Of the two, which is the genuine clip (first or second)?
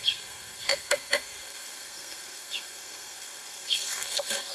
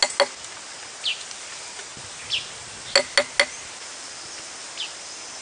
second